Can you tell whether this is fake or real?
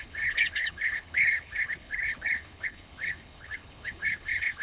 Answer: fake